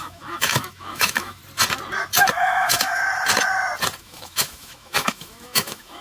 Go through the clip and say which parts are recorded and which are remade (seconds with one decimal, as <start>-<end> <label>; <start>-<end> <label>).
0.0-1.4 remade; 1.4-2.3 recorded; 2.3-3.0 remade; 3.0-4.0 recorded; 4.0-6.0 remade